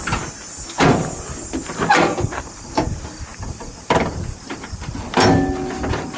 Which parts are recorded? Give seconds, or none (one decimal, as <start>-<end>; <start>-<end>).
0.0-6.2